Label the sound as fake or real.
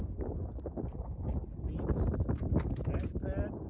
real